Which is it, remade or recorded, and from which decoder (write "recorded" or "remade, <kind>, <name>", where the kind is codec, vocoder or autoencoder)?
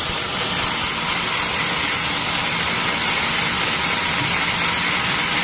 recorded